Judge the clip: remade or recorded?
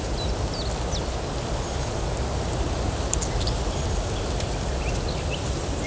recorded